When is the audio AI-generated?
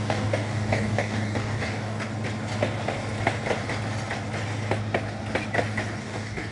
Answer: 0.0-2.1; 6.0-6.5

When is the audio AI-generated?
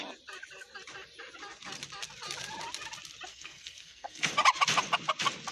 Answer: 3.3-4.3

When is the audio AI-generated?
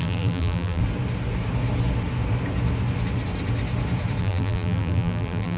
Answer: 0.0-0.8; 4.2-5.6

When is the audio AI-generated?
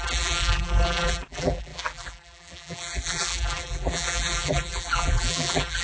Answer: 0.0-5.8